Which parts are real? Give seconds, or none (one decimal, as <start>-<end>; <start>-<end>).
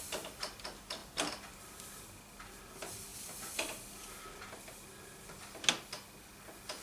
0.0-6.8